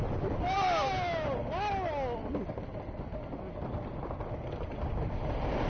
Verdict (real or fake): real